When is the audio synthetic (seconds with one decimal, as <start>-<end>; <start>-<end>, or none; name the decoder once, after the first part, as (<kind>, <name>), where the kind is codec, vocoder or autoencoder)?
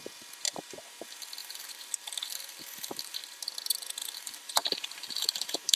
1.4-3.5 (vocoder, BigVGAN v2); 4.0-5.8